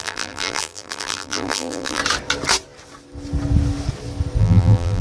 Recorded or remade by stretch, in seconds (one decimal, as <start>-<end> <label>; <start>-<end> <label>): 0.0-2.0 remade; 2.0-4.4 recorded; 4.4-5.0 remade